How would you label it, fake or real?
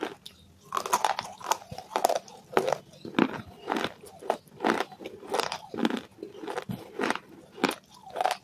real